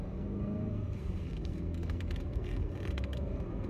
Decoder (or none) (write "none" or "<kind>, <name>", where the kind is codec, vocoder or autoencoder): codec, SNAC